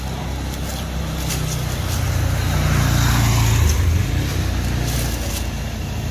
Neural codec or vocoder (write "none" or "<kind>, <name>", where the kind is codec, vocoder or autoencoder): none